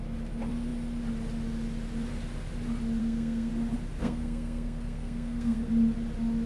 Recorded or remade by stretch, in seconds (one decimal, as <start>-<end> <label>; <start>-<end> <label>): 0.0-3.0 recorded; 3.0-3.5 remade; 3.5-4.0 recorded; 4.0-5.7 remade; 5.7-6.5 recorded